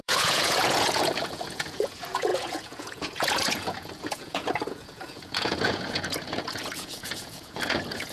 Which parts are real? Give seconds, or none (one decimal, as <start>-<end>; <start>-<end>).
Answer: none